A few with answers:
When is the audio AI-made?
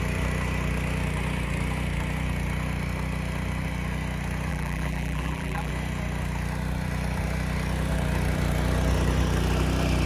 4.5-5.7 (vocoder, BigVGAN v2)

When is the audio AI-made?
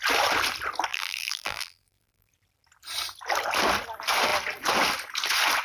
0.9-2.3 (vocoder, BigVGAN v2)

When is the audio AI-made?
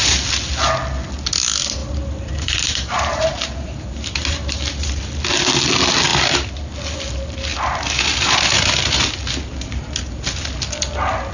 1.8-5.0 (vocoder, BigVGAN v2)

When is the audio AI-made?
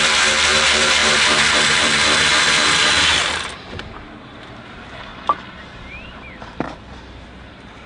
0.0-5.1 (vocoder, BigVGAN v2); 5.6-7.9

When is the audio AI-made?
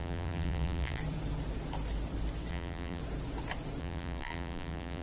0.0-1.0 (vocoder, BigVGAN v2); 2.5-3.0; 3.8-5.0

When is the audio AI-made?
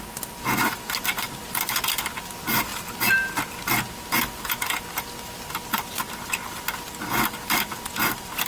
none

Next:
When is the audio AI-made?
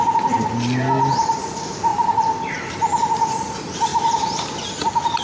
1.9-2.5 (vocoder, BigVGAN v2); 3.9-4.4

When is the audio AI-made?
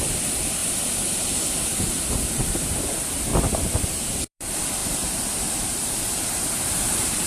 0.0-0.6 (vocoder, BigVGAN v2); 1.6-3.3; 4.2-7.3